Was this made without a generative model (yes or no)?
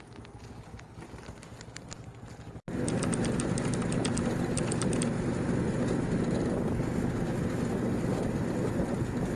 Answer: yes